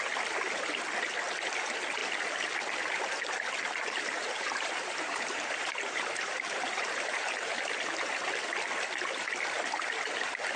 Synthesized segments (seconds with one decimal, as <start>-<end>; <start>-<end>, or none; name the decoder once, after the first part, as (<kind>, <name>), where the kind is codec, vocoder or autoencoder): 3.8-7.9 (vocoder, BigVGAN v2)